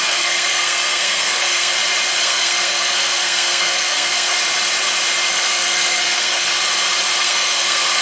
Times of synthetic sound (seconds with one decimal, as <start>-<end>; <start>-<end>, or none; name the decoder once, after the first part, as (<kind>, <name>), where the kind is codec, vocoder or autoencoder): 0.0-1.7 (codec, SNAC); 2.2-4.4; 5.3-6.5; 7.2-8.0